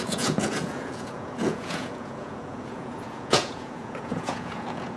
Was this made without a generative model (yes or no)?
no